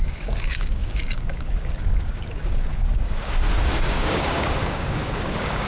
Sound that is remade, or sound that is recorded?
remade